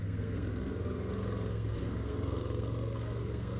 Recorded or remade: remade